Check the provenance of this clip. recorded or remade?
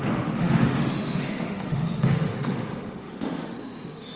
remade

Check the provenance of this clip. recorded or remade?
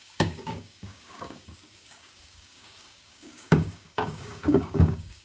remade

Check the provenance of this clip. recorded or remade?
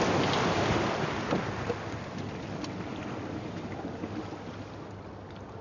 recorded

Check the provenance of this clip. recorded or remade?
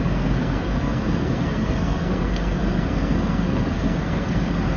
remade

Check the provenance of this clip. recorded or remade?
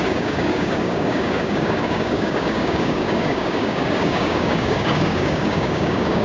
remade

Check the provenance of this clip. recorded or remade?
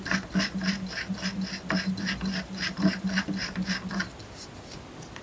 recorded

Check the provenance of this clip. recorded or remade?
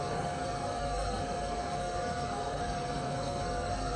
remade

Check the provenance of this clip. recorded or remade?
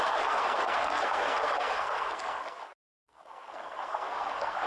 remade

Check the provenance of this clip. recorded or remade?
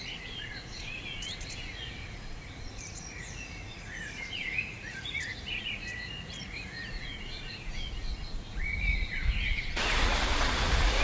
remade